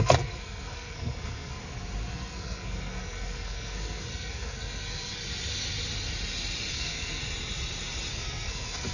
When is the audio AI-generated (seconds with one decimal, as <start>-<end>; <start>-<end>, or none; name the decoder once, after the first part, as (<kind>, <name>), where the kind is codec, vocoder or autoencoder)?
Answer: 0.0-1.6 (codec, SNAC); 2.1-5.2; 6.7-7.2; 8.1-8.9